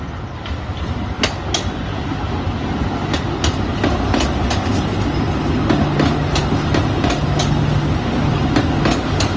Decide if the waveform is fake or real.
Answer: real